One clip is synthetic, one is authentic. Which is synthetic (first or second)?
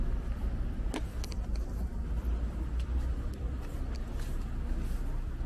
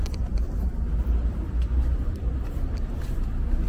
second